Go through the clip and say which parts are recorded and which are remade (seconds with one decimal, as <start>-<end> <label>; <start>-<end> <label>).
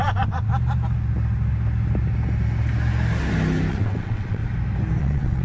0.0-0.5 remade; 0.5-3.7 recorded; 3.7-4.4 remade; 4.4-5.0 recorded; 5.0-5.4 remade